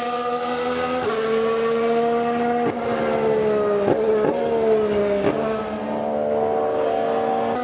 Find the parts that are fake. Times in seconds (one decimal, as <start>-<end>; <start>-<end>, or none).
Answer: 5.0-5.6